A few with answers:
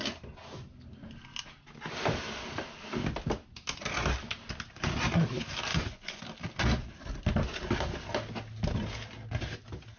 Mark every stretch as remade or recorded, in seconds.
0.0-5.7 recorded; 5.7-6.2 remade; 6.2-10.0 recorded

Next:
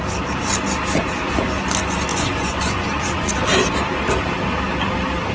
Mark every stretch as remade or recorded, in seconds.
0.0-2.1 recorded; 2.1-3.3 remade; 3.3-5.3 recorded

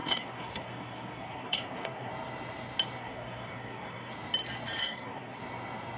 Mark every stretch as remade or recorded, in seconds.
0.0-2.1 remade; 2.1-3.0 recorded; 3.0-4.1 remade; 4.1-4.8 recorded; 4.8-5.4 remade; 5.4-6.0 recorded

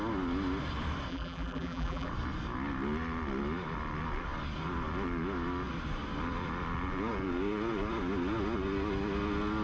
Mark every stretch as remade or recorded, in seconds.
0.0-1.1 recorded; 1.1-2.1 remade; 2.1-9.6 recorded

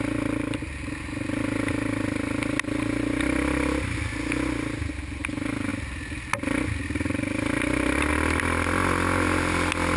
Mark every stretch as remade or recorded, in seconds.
0.0-10.0 recorded